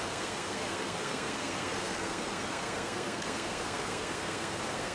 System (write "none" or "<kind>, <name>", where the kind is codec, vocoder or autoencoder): codec, SNAC